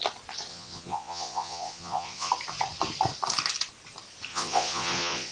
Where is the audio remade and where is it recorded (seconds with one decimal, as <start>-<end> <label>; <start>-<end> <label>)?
0.0-0.5 recorded; 0.5-2.3 remade; 2.3-4.3 recorded; 4.3-5.3 remade